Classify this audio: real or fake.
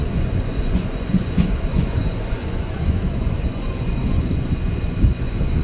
fake